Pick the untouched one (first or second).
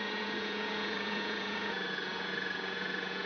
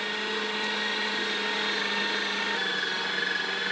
second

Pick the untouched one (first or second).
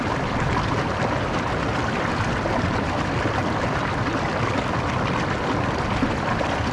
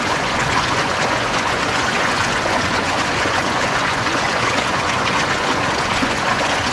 first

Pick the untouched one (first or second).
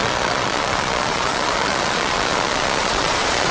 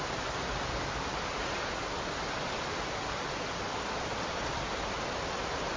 second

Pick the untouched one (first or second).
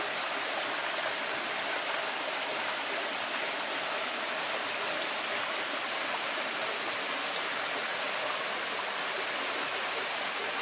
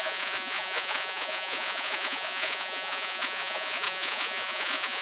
first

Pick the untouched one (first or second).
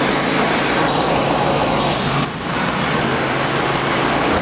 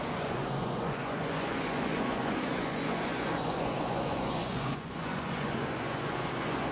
first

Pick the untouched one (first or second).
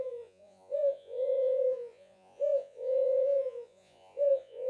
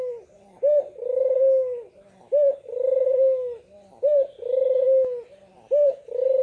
second